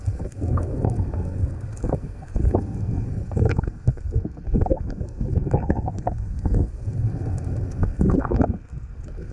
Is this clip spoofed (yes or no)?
yes